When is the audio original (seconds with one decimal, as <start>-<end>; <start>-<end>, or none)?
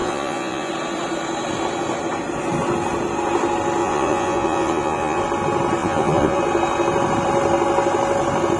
0.7-3.8; 5.2-5.8; 6.4-8.6